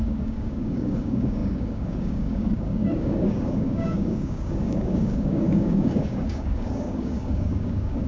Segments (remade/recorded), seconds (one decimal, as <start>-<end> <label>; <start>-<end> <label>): 0.0-8.1 remade